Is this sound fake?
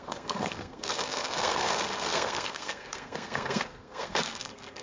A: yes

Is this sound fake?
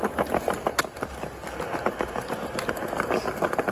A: no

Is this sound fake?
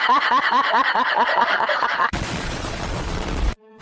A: yes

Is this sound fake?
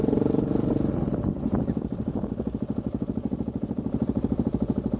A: no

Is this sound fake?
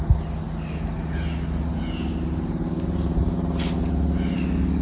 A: no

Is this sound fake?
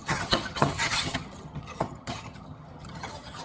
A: yes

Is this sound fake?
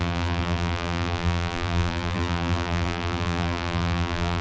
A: yes